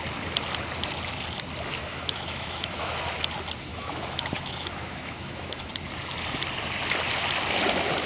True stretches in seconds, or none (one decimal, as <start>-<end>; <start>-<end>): 0.0-1.8; 3.0-3.7; 5.7-8.1